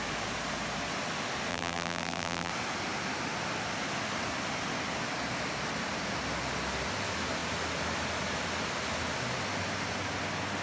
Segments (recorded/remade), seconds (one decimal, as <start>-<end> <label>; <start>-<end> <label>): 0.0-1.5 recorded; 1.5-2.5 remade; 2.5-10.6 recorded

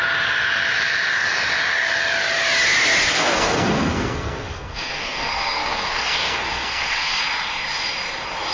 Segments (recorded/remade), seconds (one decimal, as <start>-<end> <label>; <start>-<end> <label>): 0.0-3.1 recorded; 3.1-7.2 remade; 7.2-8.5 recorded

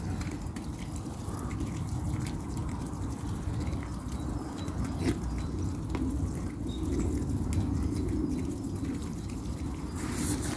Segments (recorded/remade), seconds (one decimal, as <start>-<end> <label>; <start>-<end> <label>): 0.0-10.6 recorded

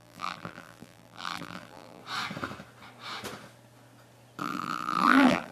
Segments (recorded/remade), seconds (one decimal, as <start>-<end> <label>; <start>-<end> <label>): 0.0-2.0 remade; 2.0-4.4 recorded; 4.4-5.5 remade

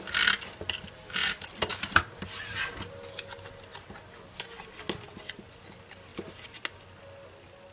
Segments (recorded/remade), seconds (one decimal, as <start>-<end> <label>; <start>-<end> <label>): 0.0-1.2 recorded; 1.2-2.0 remade; 2.0-6.1 recorded; 6.1-6.6 remade; 6.6-7.7 recorded